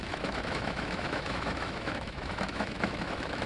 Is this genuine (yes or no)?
no